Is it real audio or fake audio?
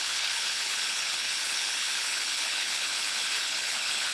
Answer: fake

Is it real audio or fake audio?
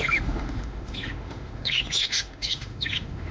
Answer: fake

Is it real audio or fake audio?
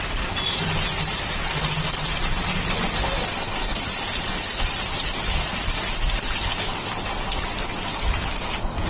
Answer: real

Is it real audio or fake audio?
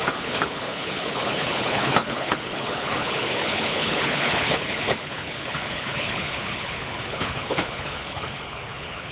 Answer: fake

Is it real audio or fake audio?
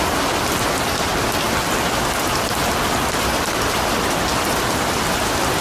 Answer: real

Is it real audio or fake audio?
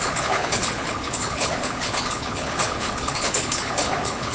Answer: fake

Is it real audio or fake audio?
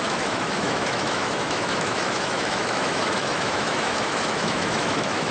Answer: fake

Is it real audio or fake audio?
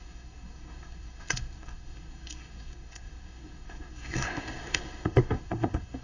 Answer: fake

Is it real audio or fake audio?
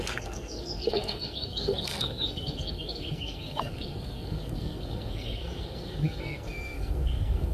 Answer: fake